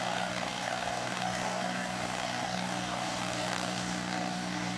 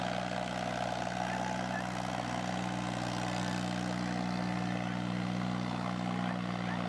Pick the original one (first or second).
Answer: second